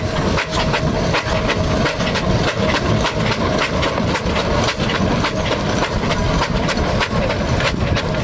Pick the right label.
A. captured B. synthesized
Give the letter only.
A